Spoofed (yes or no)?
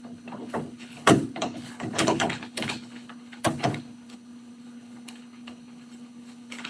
yes